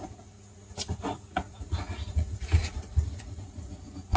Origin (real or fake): fake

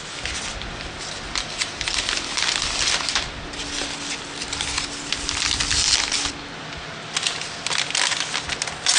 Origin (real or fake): real